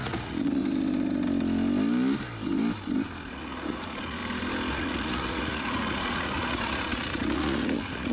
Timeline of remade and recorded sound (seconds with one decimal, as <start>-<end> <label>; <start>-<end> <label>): 0.0-0.6 remade; 0.6-3.3 recorded; 3.3-4.2 remade; 4.2-4.7 recorded; 4.7-8.1 remade